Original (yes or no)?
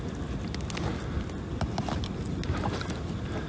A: yes